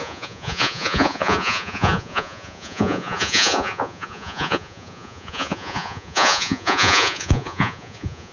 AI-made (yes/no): yes